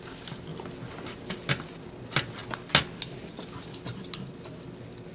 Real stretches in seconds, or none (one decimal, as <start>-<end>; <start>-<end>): 0.0-5.1